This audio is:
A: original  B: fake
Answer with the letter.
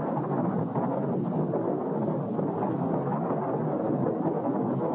A